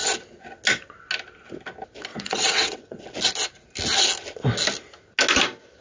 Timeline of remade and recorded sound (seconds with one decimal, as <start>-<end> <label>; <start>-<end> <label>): 0.0-2.1 recorded; 2.1-3.0 remade; 3.0-5.8 recorded